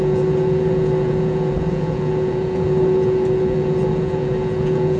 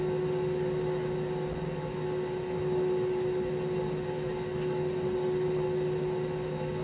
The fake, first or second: first